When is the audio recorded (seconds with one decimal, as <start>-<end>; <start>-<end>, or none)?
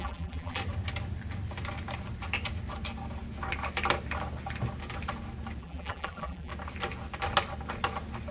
0.6-5.6; 6.5-8.3